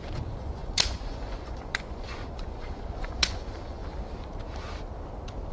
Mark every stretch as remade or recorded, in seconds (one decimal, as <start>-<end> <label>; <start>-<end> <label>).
0.0-3.8 remade; 3.8-5.5 recorded